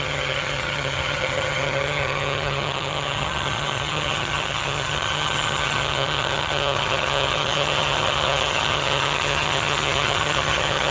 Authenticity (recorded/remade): remade